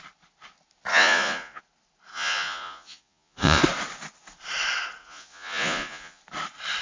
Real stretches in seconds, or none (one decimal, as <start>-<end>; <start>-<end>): 0.0-0.9; 1.6-2.1; 3.6-5.0; 6.2-6.8